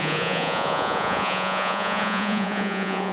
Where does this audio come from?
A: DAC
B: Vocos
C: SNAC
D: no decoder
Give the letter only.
B